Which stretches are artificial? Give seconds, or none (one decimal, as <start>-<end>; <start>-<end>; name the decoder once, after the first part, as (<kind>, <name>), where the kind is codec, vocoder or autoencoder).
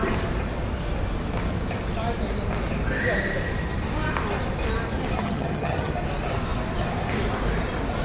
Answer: 5.2-5.9 (vocoder, HiFi-GAN)